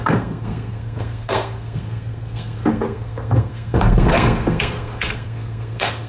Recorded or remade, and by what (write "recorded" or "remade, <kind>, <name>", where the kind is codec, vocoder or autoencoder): remade, codec, SNAC